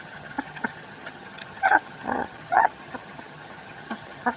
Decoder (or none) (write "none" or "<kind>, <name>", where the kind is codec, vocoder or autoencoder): vocoder, HiFi-GAN